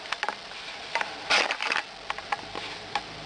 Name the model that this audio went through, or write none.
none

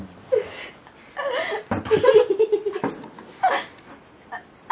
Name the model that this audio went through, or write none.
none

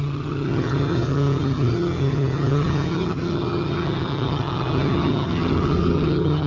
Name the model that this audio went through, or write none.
vocoder, HiFi-GAN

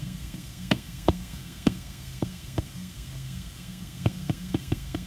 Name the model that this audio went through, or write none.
codec, SNAC